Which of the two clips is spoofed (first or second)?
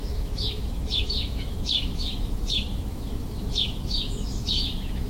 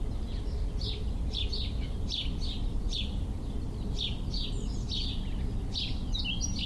first